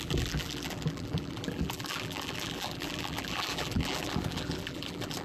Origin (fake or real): fake